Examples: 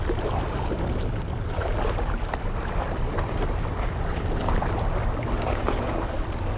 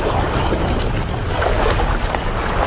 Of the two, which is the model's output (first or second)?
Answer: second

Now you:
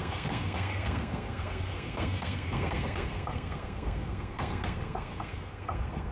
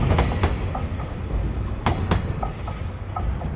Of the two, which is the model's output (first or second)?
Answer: first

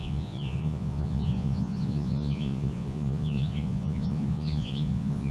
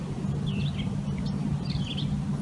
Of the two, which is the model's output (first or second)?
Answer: first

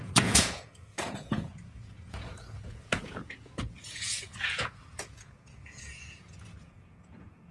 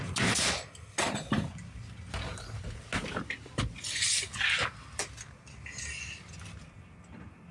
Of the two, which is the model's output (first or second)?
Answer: first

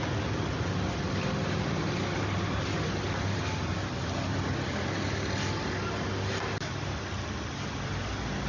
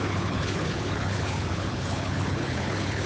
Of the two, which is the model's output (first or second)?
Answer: second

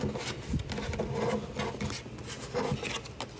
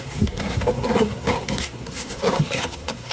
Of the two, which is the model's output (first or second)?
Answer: second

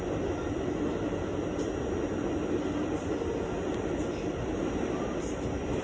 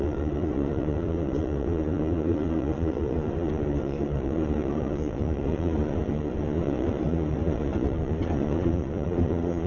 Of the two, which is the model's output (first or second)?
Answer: second